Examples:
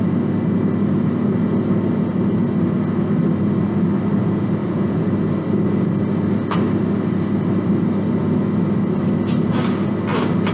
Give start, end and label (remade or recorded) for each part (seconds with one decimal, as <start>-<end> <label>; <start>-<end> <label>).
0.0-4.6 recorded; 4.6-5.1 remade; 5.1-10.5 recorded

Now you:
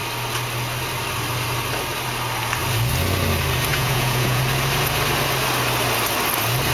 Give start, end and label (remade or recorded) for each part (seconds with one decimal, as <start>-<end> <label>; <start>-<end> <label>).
0.0-3.7 recorded; 3.7-4.4 remade; 4.4-6.7 recorded

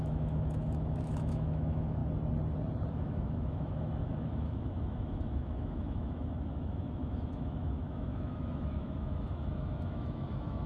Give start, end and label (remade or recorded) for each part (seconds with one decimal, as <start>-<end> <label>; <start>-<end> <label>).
0.0-2.0 remade; 2.0-2.9 recorded; 2.9-10.7 remade